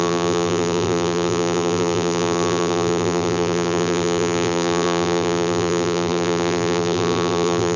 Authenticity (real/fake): fake